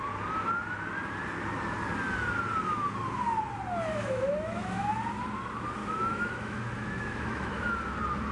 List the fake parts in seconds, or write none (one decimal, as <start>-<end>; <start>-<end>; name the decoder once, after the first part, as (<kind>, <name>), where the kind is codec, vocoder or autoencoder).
3.9-4.9 (autoencoder, DAC-VAE); 5.8-7.7